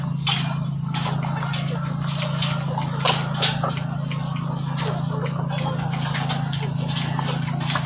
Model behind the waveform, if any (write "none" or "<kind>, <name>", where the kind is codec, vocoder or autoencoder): none